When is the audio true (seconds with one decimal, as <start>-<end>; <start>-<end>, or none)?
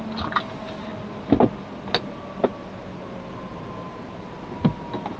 0.0-5.2